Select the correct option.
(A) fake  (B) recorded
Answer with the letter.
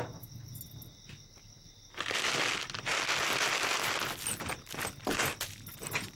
B